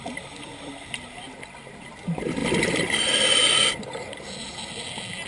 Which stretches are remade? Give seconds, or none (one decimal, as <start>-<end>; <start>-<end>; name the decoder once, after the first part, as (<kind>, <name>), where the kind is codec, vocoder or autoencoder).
none